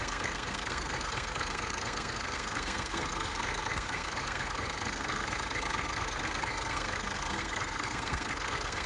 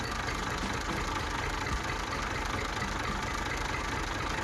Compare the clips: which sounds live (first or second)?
second